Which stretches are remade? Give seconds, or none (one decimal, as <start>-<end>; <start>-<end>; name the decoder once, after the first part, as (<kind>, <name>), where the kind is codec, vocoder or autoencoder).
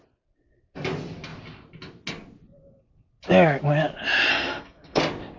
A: 4.3-5.0 (codec, SNAC)